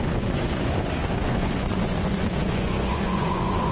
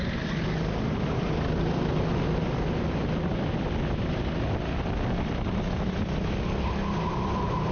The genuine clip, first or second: second